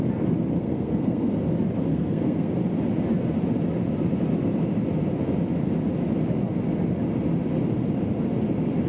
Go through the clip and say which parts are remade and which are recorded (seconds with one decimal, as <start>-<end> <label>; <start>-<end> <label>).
0.0-0.6 recorded; 0.6-1.3 remade; 1.3-1.9 recorded; 1.9-2.5 remade; 2.5-8.9 recorded